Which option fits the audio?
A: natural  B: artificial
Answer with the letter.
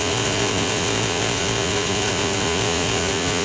B